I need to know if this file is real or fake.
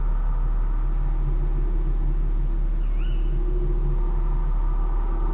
real